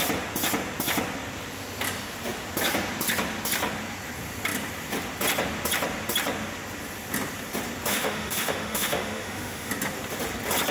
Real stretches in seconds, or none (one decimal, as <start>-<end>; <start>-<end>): 0.0-7.9; 9.7-10.7